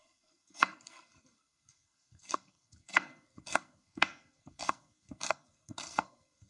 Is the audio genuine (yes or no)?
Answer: no